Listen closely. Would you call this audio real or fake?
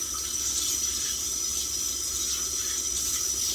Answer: real